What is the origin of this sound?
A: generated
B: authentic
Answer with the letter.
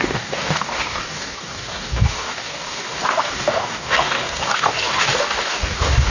A